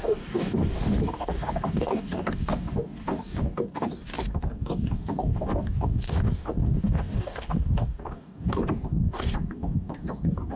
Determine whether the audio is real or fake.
fake